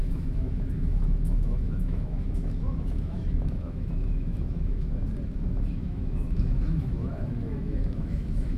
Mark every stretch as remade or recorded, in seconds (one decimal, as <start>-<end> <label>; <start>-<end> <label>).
0.0-5.0 remade; 5.0-5.7 recorded; 5.7-8.6 remade